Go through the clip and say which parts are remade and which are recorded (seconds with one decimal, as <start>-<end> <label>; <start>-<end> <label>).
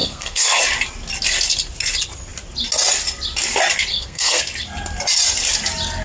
0.0-0.6 remade; 0.6-3.9 recorded; 3.9-4.4 remade; 4.4-6.0 recorded